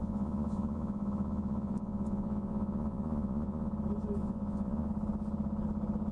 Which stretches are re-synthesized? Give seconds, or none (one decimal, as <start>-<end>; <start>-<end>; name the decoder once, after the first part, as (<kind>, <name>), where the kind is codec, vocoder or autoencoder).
0.0-3.7 (vocoder, Vocos); 4.2-4.9